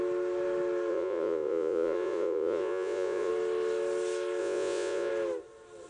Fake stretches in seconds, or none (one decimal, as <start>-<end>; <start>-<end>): 0.9-3.3; 4.4-5.1